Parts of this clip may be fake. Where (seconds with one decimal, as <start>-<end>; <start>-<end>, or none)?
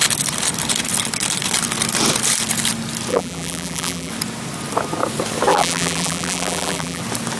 3.1-4.1; 5.5-7.0